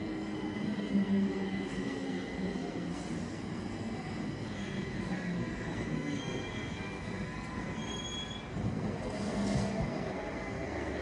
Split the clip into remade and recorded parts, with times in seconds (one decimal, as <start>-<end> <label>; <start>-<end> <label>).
0.0-7.8 remade; 7.8-8.5 recorded; 8.5-11.0 remade